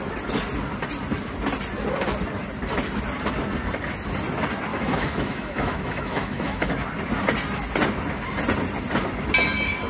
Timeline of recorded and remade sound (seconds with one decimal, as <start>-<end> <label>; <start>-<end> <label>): 0.0-4.7 recorded; 4.7-6.7 remade; 6.7-9.9 recorded